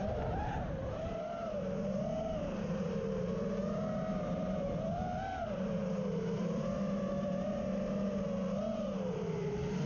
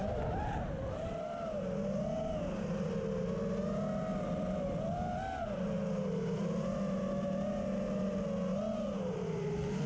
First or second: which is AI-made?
first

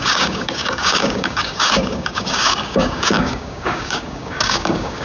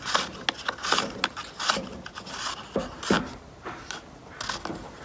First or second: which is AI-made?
first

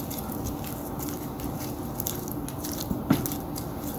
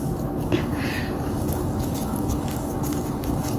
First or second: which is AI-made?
second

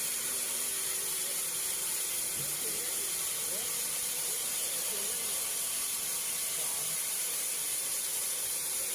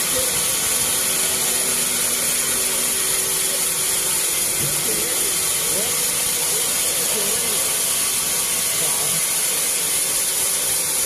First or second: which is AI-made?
first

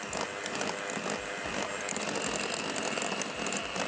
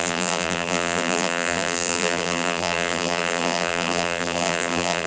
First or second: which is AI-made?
second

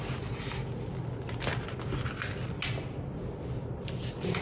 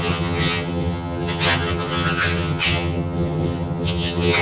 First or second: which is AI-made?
second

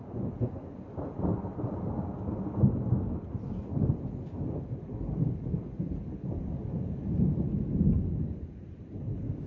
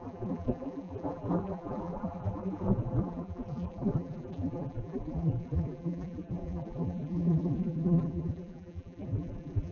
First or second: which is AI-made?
second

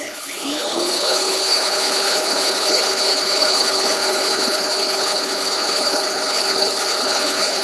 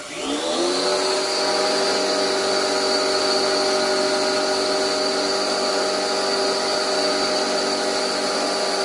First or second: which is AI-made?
first